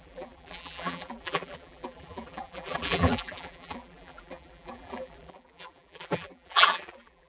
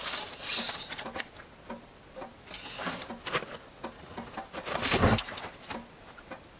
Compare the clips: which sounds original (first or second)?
second